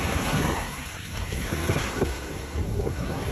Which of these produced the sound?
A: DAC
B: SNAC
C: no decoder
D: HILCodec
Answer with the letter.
B